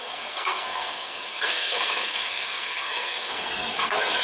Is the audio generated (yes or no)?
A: yes